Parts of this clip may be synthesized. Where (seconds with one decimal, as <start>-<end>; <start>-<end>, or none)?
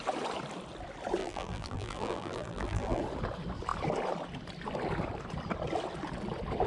1.2-3.0